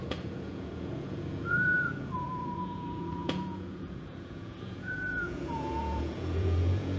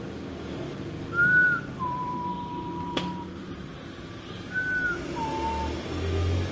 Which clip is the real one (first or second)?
second